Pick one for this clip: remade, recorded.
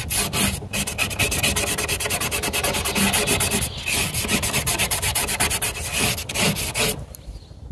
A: recorded